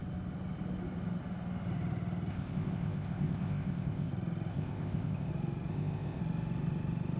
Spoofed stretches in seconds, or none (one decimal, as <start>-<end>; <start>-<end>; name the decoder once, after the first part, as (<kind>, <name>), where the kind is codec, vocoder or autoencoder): 2.3-4.1 (codec, ZipCodec); 4.5-5.3; 5.7-6.2

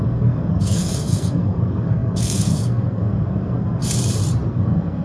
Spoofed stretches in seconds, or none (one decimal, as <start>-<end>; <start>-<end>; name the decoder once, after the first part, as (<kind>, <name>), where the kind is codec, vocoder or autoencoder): 0.0-3.8 (codec, SNAC); 4.5-5.0

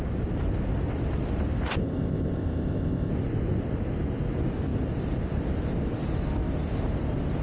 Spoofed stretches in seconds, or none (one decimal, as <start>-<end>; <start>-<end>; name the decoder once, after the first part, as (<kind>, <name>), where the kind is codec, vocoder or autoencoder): 1.8-3.1 (codec, ZipCodec)